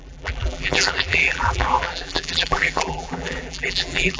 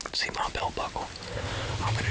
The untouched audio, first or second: second